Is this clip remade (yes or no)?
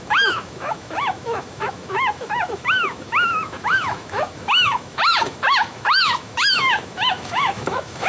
yes